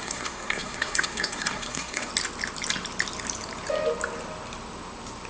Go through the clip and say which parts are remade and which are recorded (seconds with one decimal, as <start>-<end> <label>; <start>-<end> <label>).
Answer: 0.0-2.1 remade; 2.1-5.3 recorded